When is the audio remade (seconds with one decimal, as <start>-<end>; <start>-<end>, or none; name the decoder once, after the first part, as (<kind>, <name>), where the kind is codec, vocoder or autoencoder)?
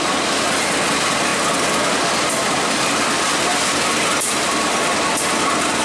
none